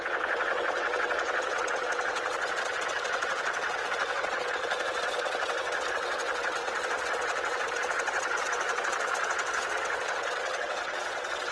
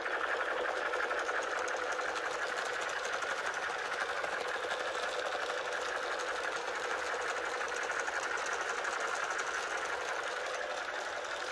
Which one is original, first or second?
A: second